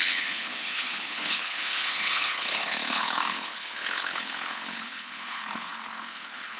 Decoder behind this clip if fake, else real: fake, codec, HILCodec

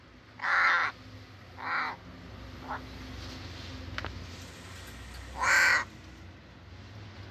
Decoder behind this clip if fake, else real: real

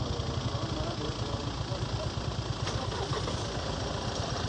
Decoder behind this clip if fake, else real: real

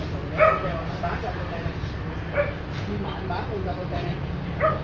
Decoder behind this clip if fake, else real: real